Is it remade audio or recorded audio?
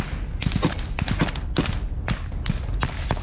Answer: recorded